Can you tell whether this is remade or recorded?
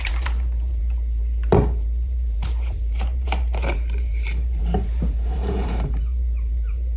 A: remade